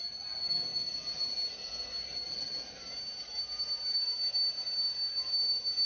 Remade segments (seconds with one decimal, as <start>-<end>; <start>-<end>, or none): none